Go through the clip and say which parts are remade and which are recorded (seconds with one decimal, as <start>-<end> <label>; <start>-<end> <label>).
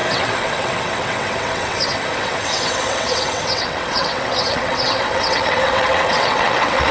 0.0-6.9 remade